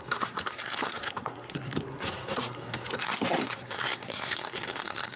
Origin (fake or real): fake